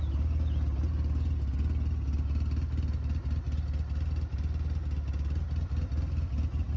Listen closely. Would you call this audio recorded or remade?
recorded